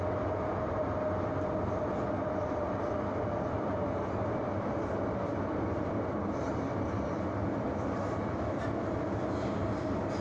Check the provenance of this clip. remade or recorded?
recorded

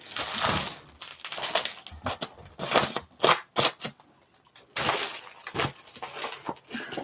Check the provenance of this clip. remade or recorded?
recorded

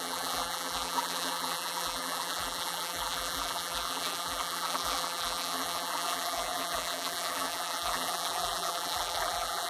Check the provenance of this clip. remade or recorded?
remade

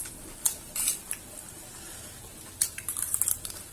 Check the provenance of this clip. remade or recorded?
recorded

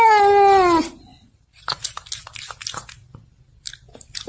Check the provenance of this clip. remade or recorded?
recorded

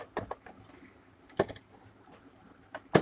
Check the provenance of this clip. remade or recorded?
recorded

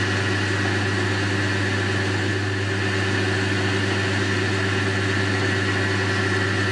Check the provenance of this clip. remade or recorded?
recorded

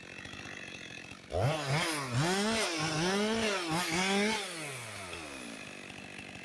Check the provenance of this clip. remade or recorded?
recorded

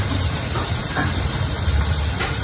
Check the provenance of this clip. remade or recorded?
remade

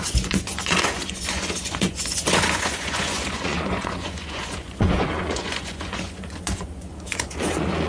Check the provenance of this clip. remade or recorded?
remade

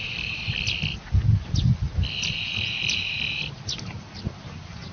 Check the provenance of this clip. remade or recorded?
recorded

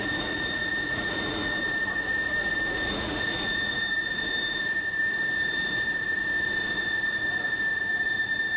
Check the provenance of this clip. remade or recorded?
remade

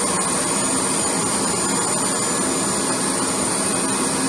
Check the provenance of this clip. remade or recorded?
recorded